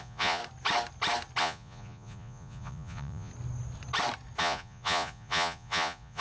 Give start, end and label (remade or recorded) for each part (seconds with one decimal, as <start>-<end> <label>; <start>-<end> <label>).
0.0-0.4 remade; 0.4-1.4 recorded; 1.4-3.3 remade; 3.3-4.4 recorded; 4.4-6.2 remade